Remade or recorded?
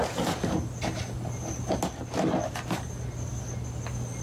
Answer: recorded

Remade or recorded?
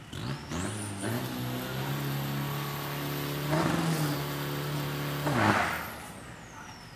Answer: recorded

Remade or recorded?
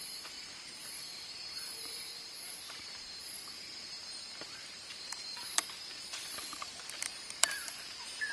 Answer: remade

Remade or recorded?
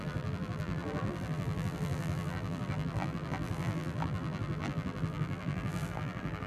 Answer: remade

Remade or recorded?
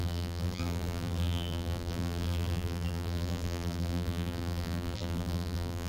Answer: remade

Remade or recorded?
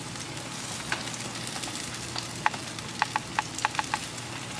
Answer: recorded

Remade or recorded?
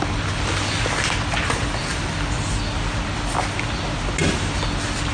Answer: recorded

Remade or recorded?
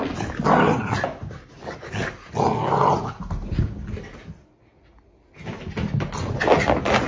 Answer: recorded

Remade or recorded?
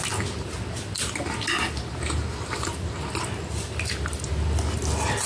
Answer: recorded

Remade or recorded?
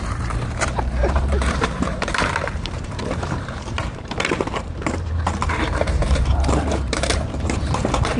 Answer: remade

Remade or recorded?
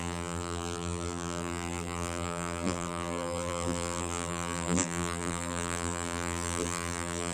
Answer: remade